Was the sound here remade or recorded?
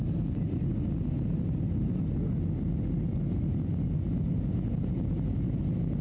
recorded